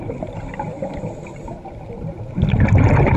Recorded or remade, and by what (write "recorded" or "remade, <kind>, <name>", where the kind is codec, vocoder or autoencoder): recorded